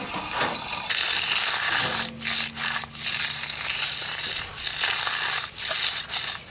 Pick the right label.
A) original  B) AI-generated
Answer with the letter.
A